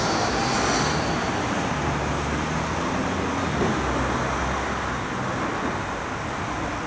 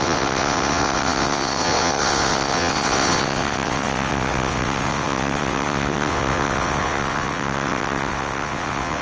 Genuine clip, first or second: first